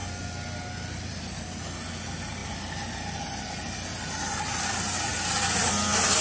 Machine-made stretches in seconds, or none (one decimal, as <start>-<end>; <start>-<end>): none

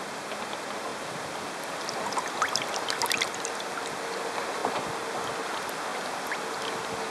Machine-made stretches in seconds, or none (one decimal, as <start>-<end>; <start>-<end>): none

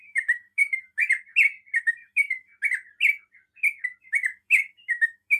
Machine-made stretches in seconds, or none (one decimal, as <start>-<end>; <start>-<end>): 0.0-1.0; 1.8-2.5; 4.0-5.4

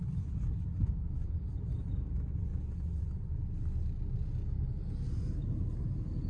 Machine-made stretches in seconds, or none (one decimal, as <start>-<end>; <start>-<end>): none

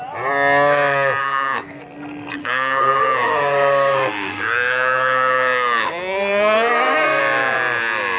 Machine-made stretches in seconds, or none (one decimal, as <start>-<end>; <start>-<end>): 1.2-1.8; 2.4-7.2